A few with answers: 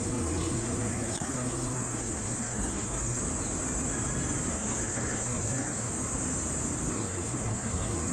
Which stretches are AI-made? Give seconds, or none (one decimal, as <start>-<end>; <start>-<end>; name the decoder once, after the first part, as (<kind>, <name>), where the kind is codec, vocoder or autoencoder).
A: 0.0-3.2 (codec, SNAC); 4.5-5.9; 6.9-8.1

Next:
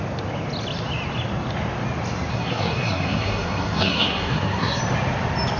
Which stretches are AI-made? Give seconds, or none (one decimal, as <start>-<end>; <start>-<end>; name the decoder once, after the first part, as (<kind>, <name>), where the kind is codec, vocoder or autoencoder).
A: 2.3-4.8 (codec, SNAC)

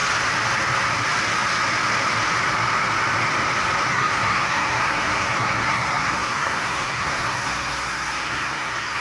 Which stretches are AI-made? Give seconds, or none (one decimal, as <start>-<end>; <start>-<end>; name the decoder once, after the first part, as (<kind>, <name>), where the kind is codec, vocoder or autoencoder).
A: 3.9-9.0 (codec, SNAC)

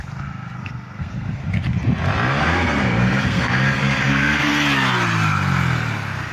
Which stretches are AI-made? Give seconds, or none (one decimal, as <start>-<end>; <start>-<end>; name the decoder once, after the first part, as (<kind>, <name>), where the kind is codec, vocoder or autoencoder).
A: 0.0-1.4 (codec, SNAC); 2.4-4.5

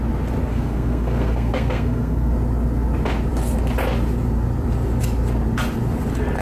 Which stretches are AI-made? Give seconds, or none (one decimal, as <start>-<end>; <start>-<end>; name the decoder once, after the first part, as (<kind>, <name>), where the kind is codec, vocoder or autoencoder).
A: 0.5-2.3 (codec, SNAC)

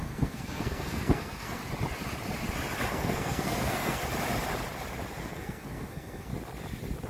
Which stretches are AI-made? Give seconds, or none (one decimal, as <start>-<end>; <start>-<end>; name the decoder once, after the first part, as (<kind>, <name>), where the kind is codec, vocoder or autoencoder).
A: 0.0-1.6 (codec, SNAC); 2.9-4.0; 5.2-6.3

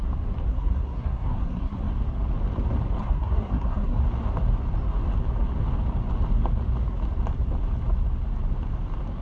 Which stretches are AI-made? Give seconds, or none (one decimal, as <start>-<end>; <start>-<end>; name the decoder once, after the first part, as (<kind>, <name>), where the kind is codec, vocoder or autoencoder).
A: 0.5-1.9 (codec, SNAC); 3.0-4.0

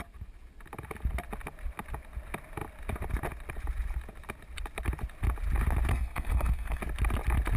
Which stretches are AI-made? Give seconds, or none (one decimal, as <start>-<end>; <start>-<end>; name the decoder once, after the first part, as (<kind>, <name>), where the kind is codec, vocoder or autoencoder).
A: 5.9-6.8 (codec, SNAC)